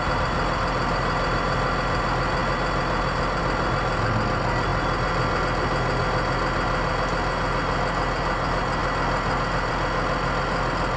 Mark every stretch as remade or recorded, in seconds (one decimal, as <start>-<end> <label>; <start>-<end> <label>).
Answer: 0.0-11.0 recorded